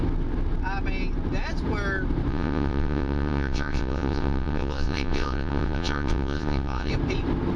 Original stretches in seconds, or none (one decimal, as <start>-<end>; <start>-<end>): 0.0-2.3; 6.9-7.6